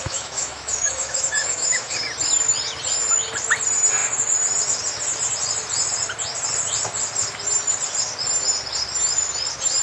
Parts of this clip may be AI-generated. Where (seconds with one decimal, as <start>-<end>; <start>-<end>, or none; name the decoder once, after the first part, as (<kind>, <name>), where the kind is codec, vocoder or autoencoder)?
0.0-2.0 (autoencoder, DAC-VAE)